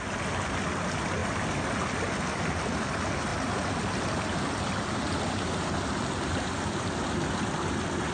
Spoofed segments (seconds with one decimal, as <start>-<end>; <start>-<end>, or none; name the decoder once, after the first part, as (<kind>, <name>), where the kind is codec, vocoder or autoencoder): none